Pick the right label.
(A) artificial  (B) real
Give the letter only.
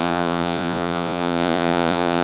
A